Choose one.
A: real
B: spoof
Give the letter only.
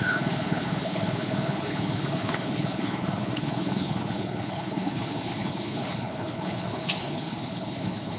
B